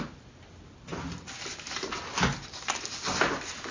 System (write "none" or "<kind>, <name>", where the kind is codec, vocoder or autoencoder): none